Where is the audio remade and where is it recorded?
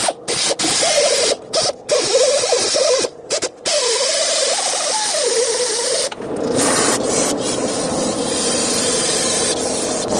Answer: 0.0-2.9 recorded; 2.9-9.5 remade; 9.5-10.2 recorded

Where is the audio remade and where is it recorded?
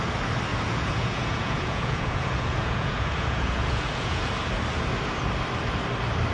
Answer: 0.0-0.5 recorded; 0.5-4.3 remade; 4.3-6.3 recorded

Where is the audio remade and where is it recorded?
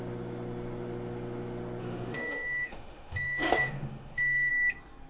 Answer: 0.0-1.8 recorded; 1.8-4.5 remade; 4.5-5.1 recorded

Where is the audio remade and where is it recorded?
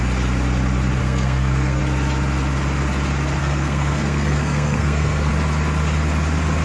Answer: 0.0-1.0 recorded; 1.0-1.8 remade; 1.8-3.4 recorded; 3.4-5.3 remade; 5.3-6.6 recorded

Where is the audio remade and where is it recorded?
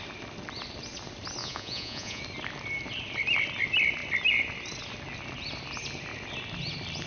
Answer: 0.0-1.4 recorded; 1.4-2.2 remade; 2.2-7.1 recorded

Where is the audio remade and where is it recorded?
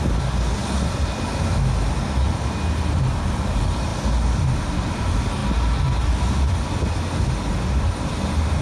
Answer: 0.0-8.6 recorded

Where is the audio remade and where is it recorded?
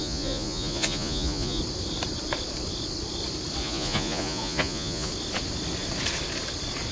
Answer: 0.0-1.6 remade; 1.6-3.6 recorded; 3.6-5.1 remade; 5.1-6.9 recorded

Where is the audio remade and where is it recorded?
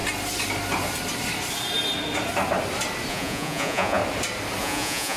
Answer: 0.0-3.1 recorded; 3.1-4.0 remade; 4.0-4.6 recorded; 4.6-5.2 remade